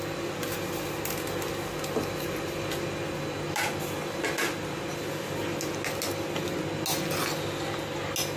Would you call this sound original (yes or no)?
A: yes